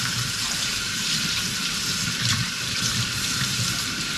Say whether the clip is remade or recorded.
remade